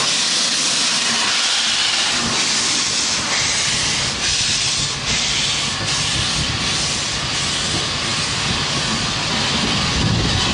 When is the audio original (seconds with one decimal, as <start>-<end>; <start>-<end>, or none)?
0.0-10.5